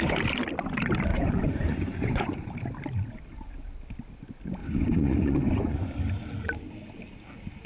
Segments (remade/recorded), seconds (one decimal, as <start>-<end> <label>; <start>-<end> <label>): 0.0-1.1 recorded; 1.1-2.5 remade; 2.5-4.6 recorded; 4.6-5.9 remade; 5.9-7.7 recorded